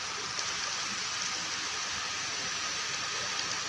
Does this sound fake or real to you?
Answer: fake